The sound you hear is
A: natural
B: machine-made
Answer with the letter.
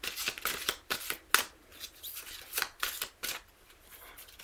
A